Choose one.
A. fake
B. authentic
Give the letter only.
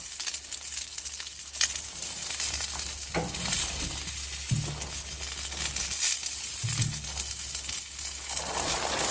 B